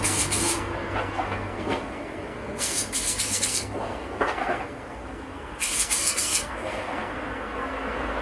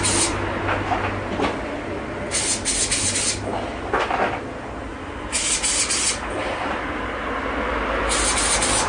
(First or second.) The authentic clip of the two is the second